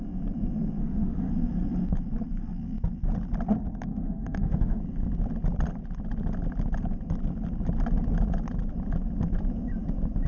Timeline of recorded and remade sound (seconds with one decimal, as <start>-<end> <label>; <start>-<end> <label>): 0.0-0.8 recorded; 0.8-1.3 remade; 1.3-3.9 recorded; 3.9-4.8 remade; 4.8-10.3 recorded